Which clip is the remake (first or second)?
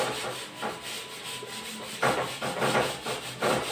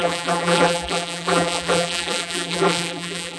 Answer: second